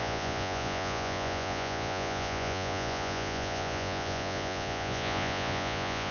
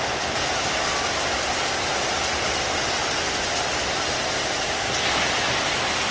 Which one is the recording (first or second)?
second